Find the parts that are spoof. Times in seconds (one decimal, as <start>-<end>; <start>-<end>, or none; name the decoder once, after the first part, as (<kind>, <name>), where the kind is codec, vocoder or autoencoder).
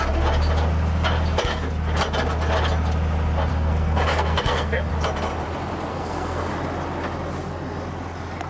3.5-4.9 (codec, SNAC); 5.9-6.5